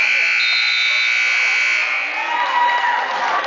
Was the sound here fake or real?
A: real